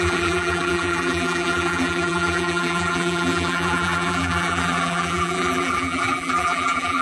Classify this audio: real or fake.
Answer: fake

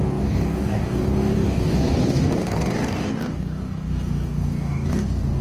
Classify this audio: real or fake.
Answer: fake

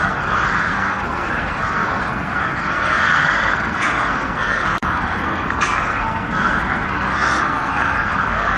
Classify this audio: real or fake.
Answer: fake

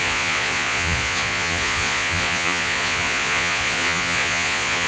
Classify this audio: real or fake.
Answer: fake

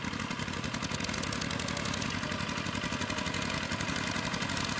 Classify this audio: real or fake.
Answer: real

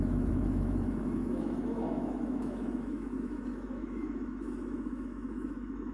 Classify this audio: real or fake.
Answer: fake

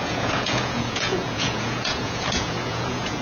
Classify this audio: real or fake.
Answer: fake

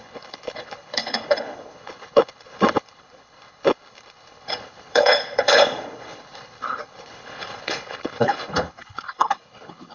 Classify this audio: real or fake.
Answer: fake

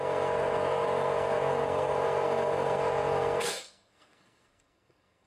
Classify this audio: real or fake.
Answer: fake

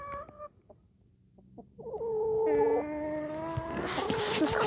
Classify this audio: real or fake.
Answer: real